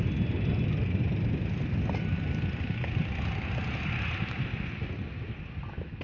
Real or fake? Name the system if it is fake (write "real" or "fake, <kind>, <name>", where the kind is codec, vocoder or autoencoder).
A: real